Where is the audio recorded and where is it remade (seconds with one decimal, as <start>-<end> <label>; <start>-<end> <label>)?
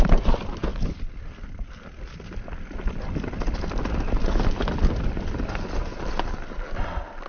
0.0-7.3 recorded